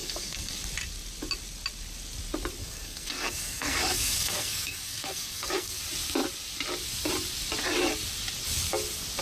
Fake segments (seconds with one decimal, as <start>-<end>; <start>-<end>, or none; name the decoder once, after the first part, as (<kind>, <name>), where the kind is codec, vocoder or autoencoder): 0.0-0.5 (codec, SNAC); 2.6-5.8